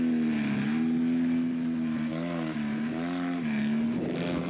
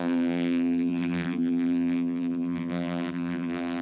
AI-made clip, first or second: second